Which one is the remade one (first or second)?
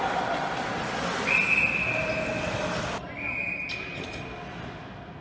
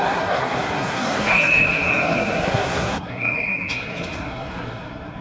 second